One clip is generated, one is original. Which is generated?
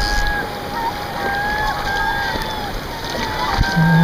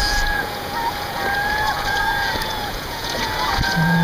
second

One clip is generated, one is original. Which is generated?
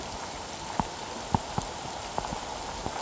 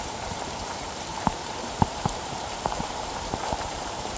second